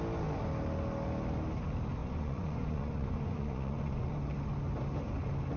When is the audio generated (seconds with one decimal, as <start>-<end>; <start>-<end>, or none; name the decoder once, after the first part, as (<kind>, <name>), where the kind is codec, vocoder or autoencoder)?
2.0-4.1 (vocoder, Vocos)